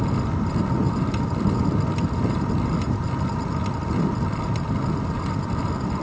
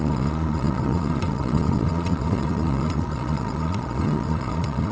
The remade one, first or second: second